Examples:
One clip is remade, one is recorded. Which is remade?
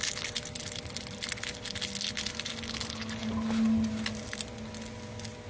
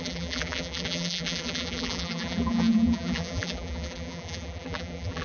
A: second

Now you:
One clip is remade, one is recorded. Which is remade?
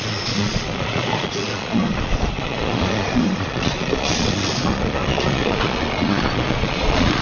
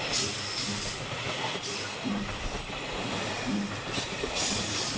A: first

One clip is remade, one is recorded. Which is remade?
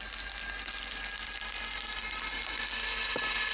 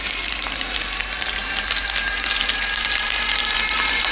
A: second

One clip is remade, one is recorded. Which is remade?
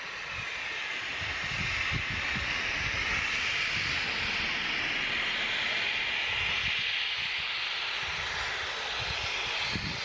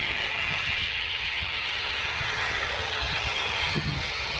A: second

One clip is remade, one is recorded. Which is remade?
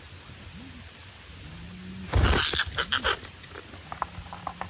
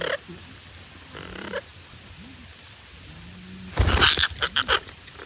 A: second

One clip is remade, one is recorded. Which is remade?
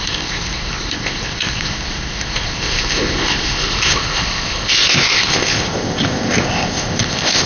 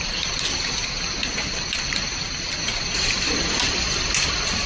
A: first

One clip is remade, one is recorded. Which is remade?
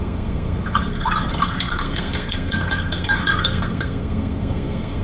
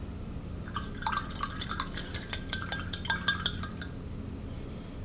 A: first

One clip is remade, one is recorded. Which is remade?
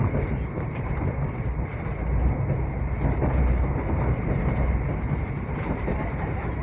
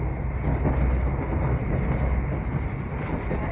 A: first